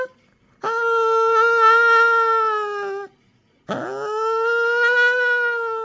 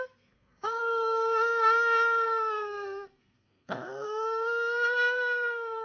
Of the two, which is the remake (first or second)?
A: second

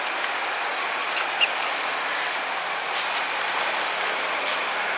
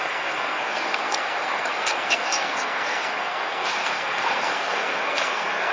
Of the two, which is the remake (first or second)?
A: second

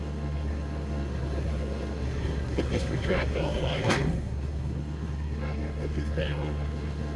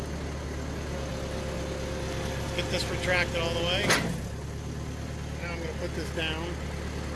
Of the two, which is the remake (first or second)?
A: first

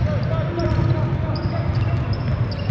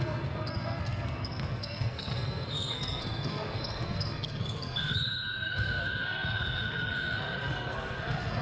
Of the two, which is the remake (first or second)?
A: second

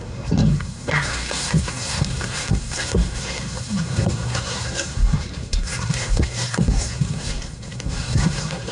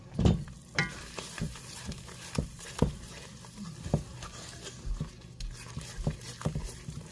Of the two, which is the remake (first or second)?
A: first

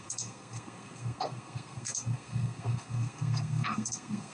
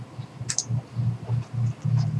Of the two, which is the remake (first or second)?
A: first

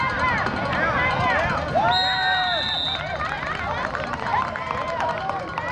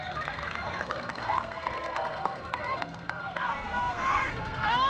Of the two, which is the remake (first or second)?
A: second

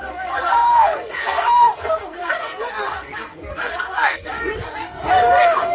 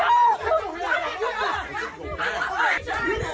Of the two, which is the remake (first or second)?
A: first